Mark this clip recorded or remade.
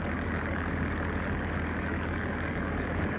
remade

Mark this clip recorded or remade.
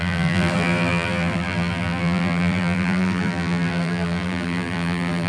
remade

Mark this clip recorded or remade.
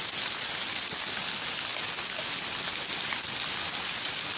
recorded